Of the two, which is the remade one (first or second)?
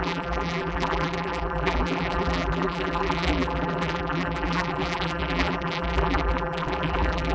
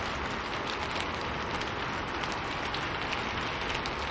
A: first